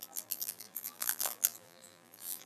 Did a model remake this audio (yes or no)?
yes